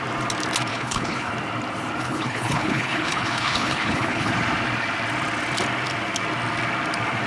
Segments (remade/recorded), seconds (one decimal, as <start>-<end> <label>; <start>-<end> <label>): 0.0-0.7 recorded; 0.7-1.3 remade; 1.3-2.0 recorded; 2.0-4.3 remade; 4.3-7.3 recorded

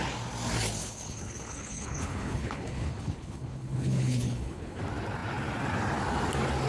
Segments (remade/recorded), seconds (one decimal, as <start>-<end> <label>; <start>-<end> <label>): 0.0-0.8 recorded; 0.8-4.8 remade; 4.8-6.7 recorded

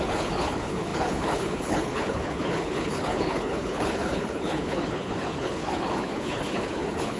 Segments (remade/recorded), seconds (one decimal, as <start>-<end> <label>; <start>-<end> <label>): 0.0-7.2 remade

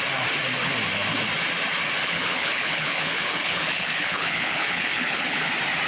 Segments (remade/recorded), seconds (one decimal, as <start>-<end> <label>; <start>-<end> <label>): 0.0-2.0 recorded; 2.0-5.5 remade; 5.5-5.9 recorded

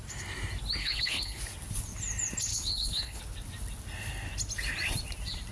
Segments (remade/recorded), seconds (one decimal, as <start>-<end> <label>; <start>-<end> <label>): 0.0-0.8 recorded; 0.8-1.4 remade; 1.4-2.5 recorded; 2.5-3.2 remade; 3.2-5.5 recorded

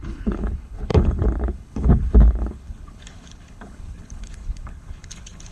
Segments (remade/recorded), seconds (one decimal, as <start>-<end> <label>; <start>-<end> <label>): 0.0-5.5 remade

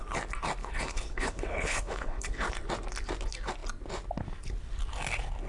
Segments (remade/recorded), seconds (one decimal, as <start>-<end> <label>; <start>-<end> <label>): 0.0-0.6 recorded; 0.6-2.5 remade; 2.5-5.5 recorded

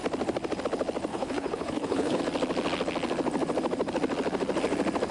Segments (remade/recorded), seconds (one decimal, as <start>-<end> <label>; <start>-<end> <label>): 0.0-1.1 recorded; 1.1-2.2 remade; 2.2-5.1 recorded